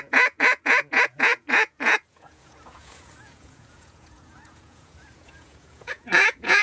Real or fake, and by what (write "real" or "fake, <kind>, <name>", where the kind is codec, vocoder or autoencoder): fake, vocoder, Vocos